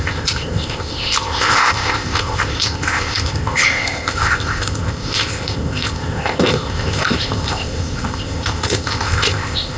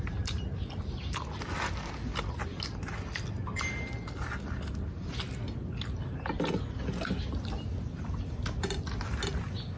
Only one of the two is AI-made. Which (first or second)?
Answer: first